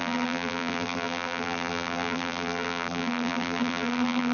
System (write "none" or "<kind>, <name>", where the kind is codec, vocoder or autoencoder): vocoder, BigVGAN v2